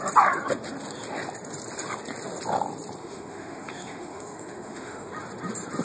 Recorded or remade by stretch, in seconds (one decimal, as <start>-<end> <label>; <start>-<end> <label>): 0.0-3.0 recorded; 3.0-5.1 remade; 5.1-5.8 recorded

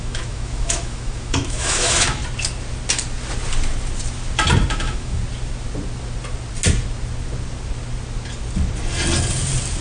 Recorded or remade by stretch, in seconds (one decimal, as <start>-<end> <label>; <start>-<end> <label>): 0.0-2.2 remade; 2.2-4.7 recorded; 4.7-5.2 remade; 5.2-9.8 recorded

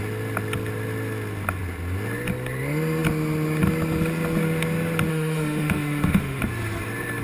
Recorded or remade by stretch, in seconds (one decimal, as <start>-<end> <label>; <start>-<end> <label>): 0.0-5.1 recorded; 5.1-6.4 remade; 6.4-7.2 recorded

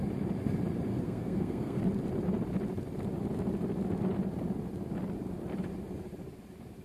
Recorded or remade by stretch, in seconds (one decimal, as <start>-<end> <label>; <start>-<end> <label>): 0.0-0.9 recorded; 0.9-1.8 remade; 1.8-6.8 recorded